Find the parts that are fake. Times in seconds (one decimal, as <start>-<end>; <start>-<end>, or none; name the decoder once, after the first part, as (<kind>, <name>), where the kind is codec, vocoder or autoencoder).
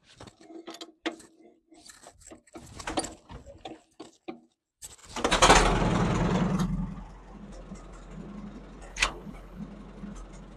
8.9-9.6 (codec, HILCodec)